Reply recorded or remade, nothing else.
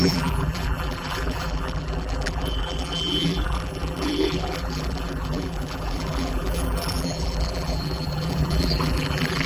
remade